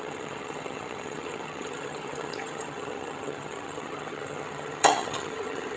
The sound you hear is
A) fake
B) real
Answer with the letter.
A